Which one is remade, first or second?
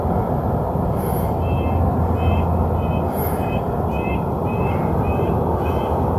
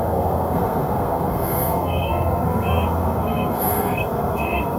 second